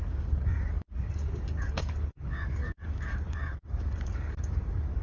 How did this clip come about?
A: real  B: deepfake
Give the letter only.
B